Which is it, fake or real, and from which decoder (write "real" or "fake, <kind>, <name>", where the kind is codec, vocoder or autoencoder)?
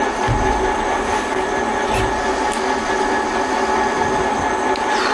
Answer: real